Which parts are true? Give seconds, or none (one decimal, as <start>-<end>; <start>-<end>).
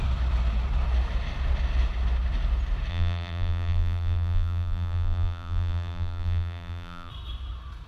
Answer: 0.0-2.9; 7.1-7.9